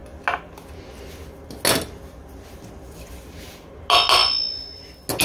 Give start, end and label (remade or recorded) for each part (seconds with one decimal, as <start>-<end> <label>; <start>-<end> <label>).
0.0-5.2 recorded